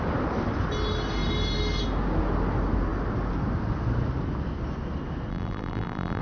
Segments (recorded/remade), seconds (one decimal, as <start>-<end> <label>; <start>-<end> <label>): 0.0-5.3 recorded; 5.3-6.2 remade